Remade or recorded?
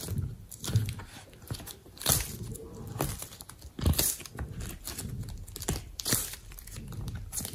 remade